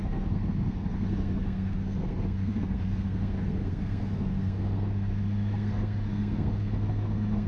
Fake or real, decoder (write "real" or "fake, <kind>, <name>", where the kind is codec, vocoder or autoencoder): fake, codec, SNAC